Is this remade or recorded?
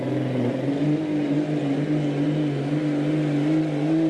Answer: recorded